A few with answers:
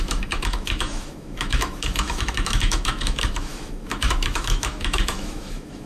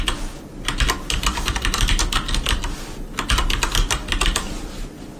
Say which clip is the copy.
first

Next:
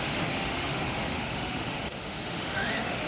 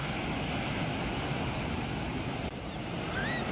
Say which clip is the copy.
first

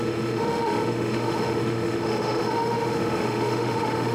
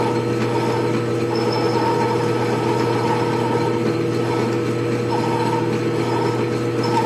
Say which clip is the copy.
first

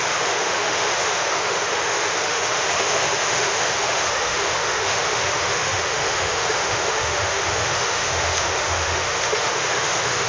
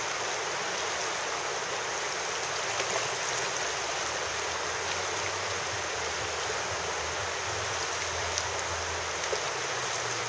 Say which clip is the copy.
first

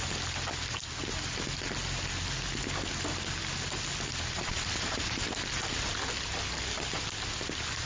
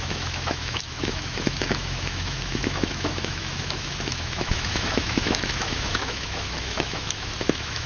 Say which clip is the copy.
second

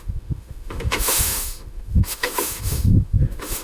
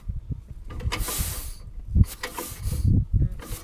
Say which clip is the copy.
first